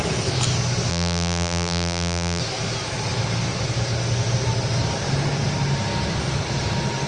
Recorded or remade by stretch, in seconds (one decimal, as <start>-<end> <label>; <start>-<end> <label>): 0.0-0.9 recorded; 0.9-2.4 remade; 2.4-7.1 recorded